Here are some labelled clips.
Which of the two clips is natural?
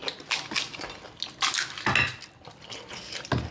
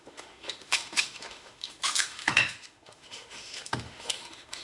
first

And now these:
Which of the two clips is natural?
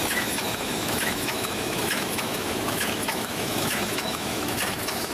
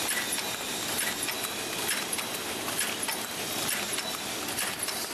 second